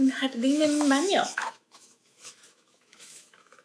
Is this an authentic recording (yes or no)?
no